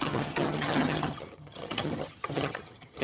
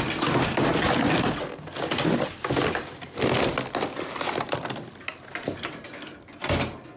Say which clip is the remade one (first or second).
first